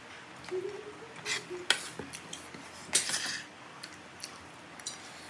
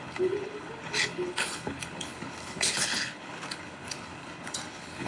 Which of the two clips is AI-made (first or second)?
second